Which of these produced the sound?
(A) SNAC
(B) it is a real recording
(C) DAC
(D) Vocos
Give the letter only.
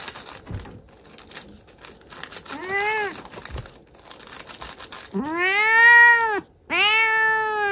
B